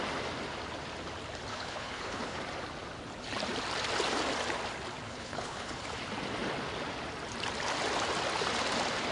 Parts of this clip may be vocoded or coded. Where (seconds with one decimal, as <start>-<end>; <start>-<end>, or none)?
1.5-2.4; 5.1-5.8